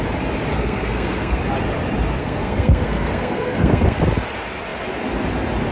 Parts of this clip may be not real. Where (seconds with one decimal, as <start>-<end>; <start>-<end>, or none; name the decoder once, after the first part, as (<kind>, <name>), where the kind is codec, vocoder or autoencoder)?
0.5-1.4 (codec, SNAC); 2.2-4.0